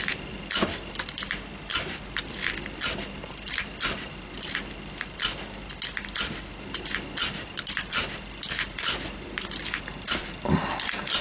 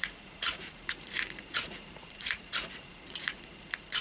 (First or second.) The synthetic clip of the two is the second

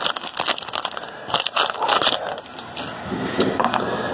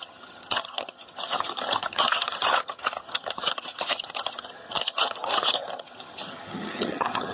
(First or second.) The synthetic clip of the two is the second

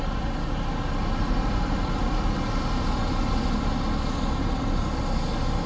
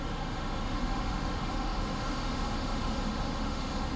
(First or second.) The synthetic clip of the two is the second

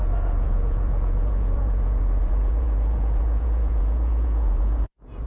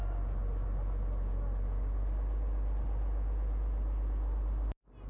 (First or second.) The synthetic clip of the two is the first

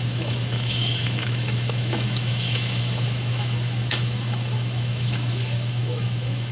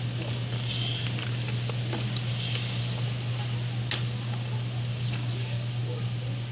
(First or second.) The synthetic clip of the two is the first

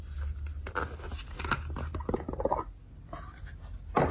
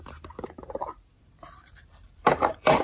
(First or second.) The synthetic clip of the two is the second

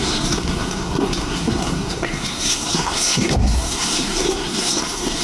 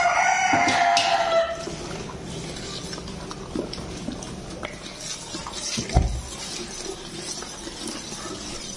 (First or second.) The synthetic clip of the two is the first